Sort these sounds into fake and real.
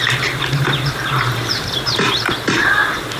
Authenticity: fake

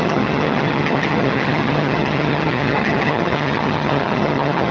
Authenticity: fake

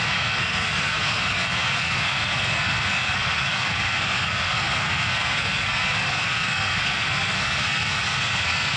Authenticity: fake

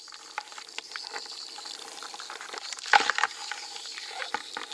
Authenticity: fake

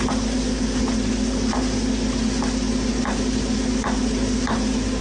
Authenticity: real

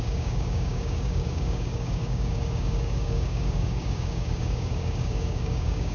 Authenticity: fake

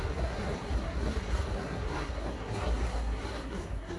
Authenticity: fake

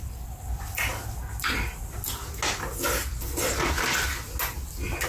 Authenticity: real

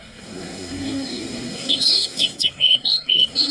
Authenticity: fake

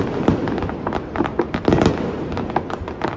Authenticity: real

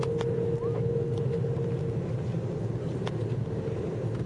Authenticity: real